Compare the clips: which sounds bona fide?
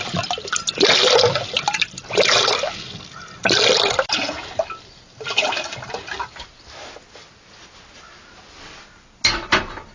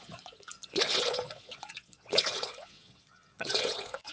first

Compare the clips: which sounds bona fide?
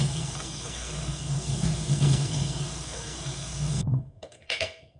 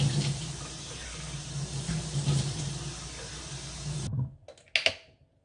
second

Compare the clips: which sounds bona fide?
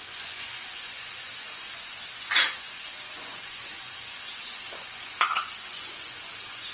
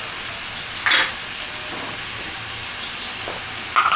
second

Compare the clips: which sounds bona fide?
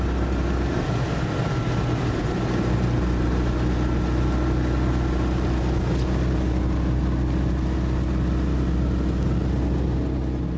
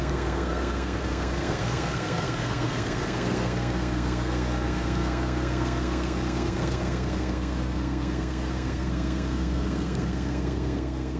first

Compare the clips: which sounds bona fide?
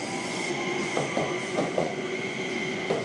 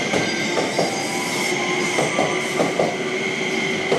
second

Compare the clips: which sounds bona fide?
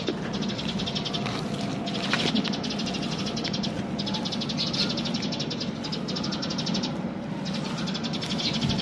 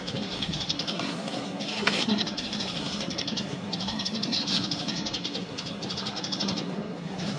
first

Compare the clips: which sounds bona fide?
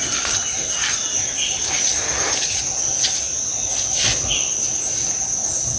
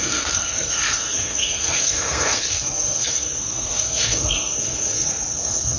first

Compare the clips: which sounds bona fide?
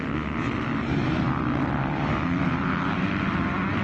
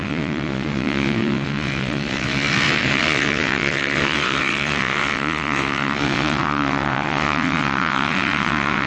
first